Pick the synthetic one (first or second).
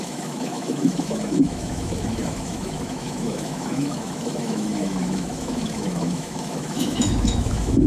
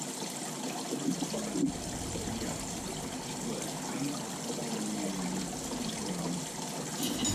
first